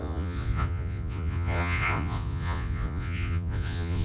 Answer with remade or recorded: remade